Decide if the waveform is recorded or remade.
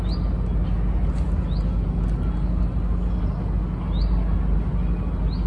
recorded